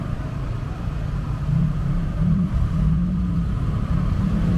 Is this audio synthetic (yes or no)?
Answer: yes